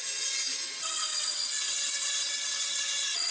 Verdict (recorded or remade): remade